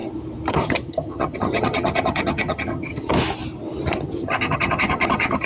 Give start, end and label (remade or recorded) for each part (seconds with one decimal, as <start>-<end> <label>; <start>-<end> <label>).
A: 0.0-0.5 recorded; 0.5-3.1 remade; 3.1-4.0 recorded; 4.0-5.5 remade